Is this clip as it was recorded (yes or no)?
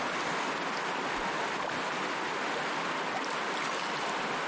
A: yes